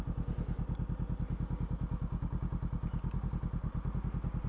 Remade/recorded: recorded